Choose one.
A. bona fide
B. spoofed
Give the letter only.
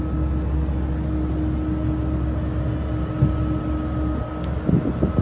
A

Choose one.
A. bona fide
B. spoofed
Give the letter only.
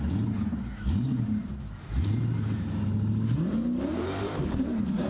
B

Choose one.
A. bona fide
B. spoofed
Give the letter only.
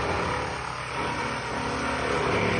A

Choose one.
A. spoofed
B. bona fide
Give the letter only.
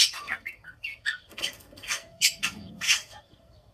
A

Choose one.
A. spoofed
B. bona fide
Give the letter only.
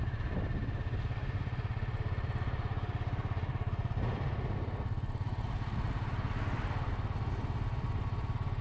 B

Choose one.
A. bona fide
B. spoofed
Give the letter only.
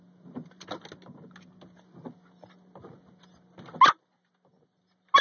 A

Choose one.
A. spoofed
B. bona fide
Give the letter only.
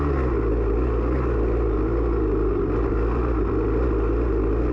B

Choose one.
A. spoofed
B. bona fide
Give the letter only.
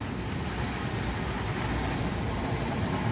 B